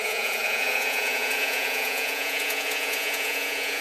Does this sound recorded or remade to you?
remade